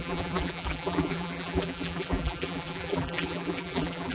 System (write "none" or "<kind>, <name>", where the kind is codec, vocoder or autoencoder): vocoder, BigVGAN v2